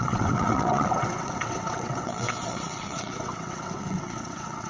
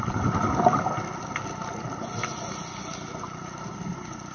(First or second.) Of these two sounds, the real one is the second